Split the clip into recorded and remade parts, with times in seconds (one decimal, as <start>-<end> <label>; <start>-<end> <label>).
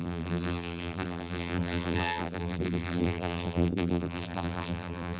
0.0-5.2 remade